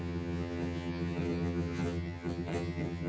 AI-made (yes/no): yes